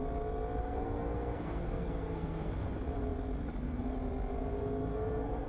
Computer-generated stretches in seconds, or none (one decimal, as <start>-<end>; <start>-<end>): 0.6-2.5; 4.9-5.5